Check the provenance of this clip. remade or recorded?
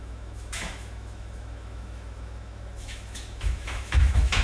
remade